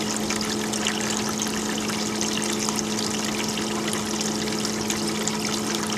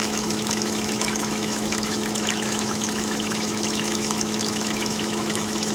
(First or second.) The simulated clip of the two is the second